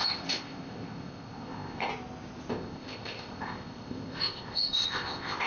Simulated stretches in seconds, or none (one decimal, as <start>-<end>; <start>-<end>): 0.0-1.9; 2.5-5.5